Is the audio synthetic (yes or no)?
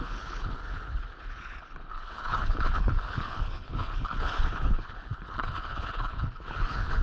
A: yes